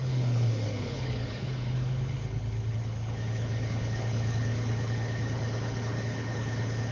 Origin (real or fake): fake